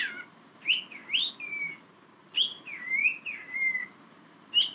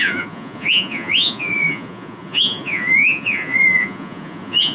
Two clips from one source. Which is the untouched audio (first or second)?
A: first